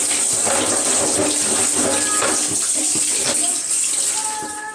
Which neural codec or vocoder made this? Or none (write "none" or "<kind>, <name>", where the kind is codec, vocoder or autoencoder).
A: none